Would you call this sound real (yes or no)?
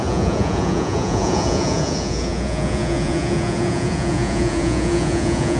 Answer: no